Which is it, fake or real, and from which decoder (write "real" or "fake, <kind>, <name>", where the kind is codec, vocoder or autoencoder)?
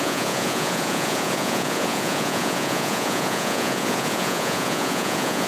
fake, vocoder, Vocos